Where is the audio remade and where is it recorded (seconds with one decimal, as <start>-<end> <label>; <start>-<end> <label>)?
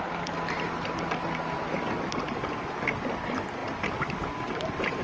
0.0-5.0 recorded